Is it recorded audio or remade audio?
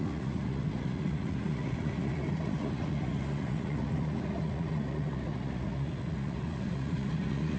remade